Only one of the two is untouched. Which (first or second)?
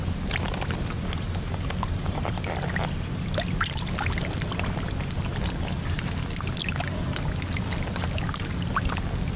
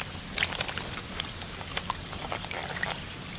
first